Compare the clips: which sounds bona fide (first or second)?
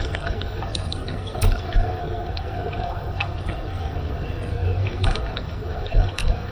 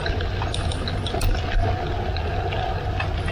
second